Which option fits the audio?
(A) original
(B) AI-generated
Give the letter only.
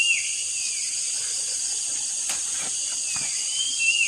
A